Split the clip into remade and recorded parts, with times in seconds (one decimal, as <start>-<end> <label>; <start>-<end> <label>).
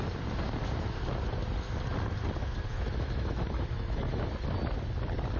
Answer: 0.0-2.7 recorded; 2.7-4.0 remade; 4.0-5.4 recorded